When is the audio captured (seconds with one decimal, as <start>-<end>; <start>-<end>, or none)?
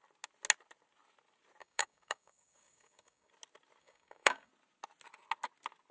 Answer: 0.0-1.6; 3.3-3.8; 4.5-5.9